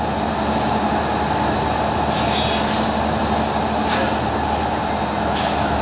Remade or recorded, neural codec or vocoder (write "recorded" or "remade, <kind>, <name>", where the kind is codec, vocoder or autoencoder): recorded